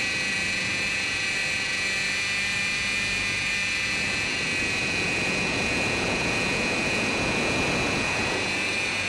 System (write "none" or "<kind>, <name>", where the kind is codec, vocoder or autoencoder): vocoder, Vocos